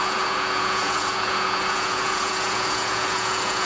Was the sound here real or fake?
fake